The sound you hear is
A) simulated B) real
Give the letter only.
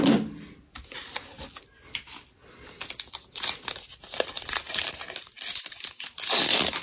B